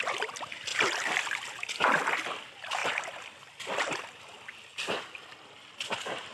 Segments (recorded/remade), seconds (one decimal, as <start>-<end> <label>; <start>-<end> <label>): 0.0-0.7 recorded; 0.7-1.5 remade; 1.5-2.8 recorded; 2.8-4.2 remade; 4.2-6.3 recorded